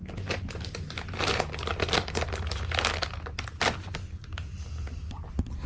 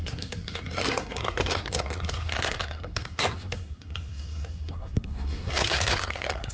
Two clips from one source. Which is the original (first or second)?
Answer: first